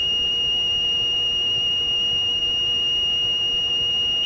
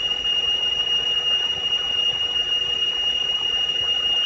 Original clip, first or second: first